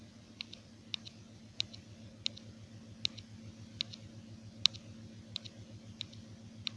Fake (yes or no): no